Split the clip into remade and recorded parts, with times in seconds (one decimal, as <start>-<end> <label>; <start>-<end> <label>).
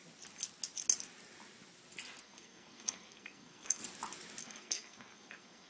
0.0-2.2 recorded; 2.2-3.8 remade; 3.8-4.4 recorded; 4.4-5.7 remade